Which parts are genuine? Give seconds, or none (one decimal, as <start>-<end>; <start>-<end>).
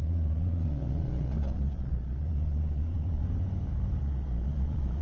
3.2-4.0